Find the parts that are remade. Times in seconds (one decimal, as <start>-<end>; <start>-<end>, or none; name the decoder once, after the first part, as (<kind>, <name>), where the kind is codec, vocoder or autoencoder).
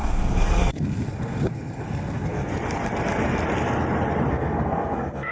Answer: 0.0-2.5 (codec, SNAC); 4.3-5.3